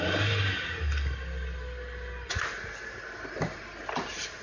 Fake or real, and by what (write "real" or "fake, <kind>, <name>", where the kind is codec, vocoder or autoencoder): real